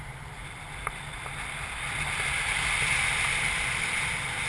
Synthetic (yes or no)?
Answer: no